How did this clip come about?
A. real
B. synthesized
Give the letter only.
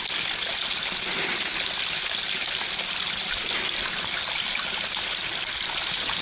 A